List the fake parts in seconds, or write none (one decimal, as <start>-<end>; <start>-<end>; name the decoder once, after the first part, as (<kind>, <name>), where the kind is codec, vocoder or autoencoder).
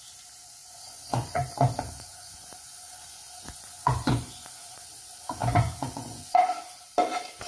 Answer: 0.4-4.9 (vocoder, Vocos); 5.4-6.3